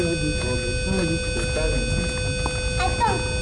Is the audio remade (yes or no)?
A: no